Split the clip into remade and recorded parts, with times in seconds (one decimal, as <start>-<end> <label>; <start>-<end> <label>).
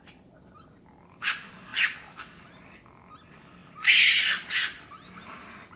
0.0-5.8 recorded